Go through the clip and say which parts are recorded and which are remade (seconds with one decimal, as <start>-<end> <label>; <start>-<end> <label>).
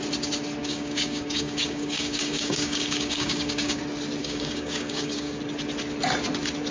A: 0.0-0.6 recorded; 0.6-3.8 remade; 3.8-4.2 recorded; 4.2-5.4 remade; 5.4-6.7 recorded